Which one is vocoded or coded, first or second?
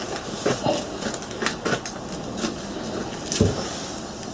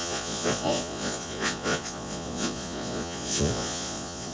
second